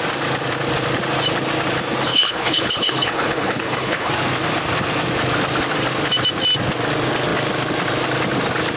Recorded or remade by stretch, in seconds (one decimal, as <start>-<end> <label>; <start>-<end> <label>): 0.0-2.1 recorded; 2.1-4.1 remade; 4.1-8.8 recorded